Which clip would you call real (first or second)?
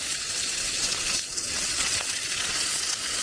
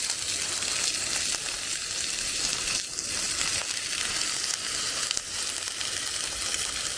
second